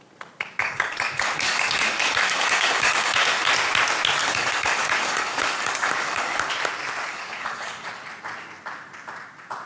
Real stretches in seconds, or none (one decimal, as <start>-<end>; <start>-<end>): 0.0-0.6; 3.5-4.2; 6.5-7.1; 7.9-9.7